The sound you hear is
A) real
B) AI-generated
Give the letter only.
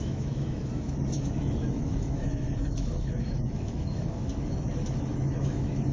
B